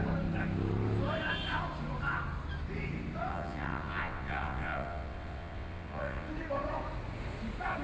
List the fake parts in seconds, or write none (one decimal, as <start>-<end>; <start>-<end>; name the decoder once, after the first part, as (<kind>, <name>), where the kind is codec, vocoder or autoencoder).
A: 3.3-6.3 (vocoder, WaveNeXt)